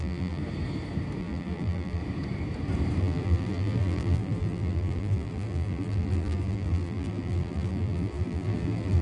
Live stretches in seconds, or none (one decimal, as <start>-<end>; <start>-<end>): 0.4-1.2; 2.0-3.0